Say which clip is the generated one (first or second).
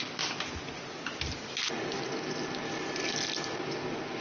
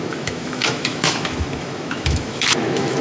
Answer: second